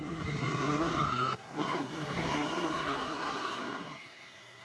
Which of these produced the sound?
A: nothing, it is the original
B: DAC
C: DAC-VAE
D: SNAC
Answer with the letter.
D